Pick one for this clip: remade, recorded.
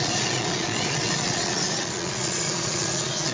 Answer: remade